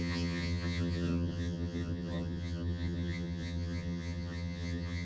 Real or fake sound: fake